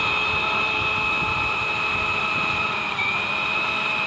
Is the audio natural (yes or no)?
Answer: no